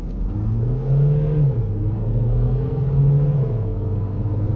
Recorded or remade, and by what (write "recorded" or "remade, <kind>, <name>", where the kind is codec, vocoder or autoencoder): remade, codec, SNAC